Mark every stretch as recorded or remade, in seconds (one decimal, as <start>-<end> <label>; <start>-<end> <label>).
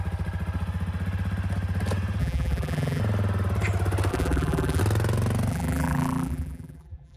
0.0-2.2 recorded; 2.2-3.0 remade; 3.0-4.1 recorded; 4.1-4.8 remade; 4.8-5.5 recorded; 5.5-7.2 remade